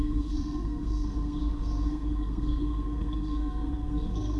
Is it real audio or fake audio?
fake